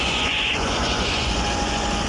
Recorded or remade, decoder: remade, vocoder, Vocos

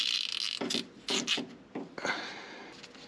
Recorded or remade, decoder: recorded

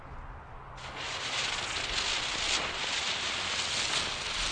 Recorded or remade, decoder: recorded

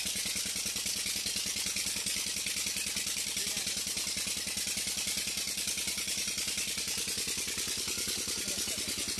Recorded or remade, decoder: recorded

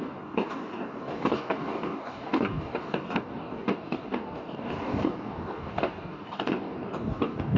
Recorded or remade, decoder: remade, codec, DAC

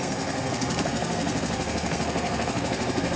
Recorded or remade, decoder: remade, codec, SNAC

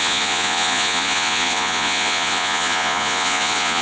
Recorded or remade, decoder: remade, vocoder, Vocos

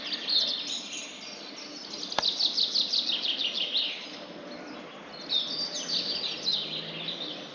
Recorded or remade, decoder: recorded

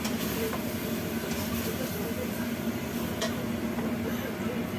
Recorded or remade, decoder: recorded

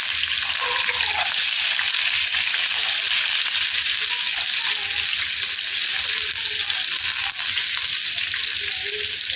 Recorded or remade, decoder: recorded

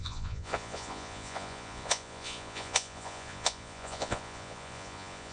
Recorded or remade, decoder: remade, vocoder, Vocos